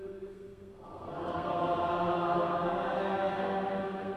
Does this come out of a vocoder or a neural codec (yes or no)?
yes